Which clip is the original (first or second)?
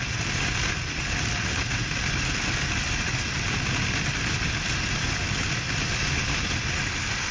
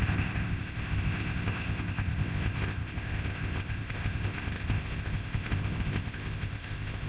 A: first